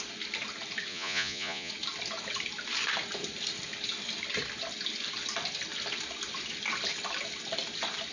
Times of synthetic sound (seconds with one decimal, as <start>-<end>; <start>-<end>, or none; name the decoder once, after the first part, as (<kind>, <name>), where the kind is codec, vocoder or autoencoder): 0.9-1.7 (vocoder, Vocos)